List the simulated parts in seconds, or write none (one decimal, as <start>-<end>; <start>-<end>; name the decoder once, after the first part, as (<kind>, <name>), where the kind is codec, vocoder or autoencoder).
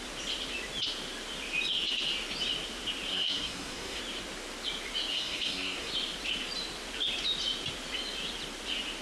3.1-4.0 (codec, SNAC); 5.1-5.9